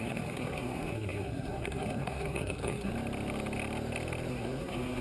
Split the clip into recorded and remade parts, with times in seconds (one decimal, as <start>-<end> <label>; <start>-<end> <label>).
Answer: 0.0-2.9 remade; 2.9-4.3 recorded; 4.3-5.0 remade

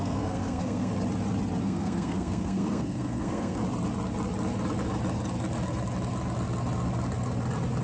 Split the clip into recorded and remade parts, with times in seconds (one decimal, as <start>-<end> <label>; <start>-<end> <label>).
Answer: 0.0-0.9 remade; 0.9-1.6 recorded; 1.6-3.6 remade; 3.6-7.8 recorded

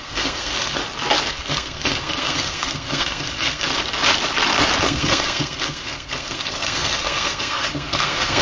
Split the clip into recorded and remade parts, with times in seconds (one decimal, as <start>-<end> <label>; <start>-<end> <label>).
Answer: 0.0-0.8 remade; 0.8-1.3 recorded; 1.3-3.7 remade; 3.7-4.8 recorded; 4.8-8.4 remade

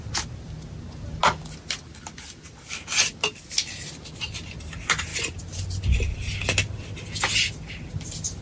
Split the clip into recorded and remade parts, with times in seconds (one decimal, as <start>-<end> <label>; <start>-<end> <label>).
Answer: 0.0-8.4 recorded

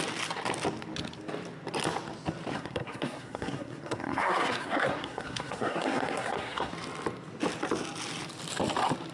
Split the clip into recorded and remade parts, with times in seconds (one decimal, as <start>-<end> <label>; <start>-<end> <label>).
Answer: 0.0-2.5 recorded; 2.5-6.7 remade; 6.7-9.1 recorded

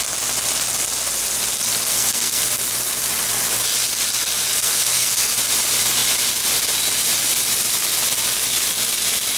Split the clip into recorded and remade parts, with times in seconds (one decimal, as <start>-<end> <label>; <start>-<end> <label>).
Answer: 0.0-1.9 recorded; 1.9-2.5 remade; 2.5-4.5 recorded; 4.5-5.3 remade; 5.3-9.4 recorded

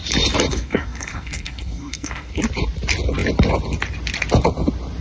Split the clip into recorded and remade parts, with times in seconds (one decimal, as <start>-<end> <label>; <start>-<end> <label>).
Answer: 0.0-0.5 recorded; 0.5-2.4 remade; 2.4-5.0 recorded